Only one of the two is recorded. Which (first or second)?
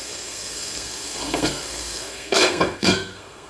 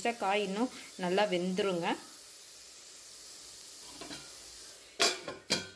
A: second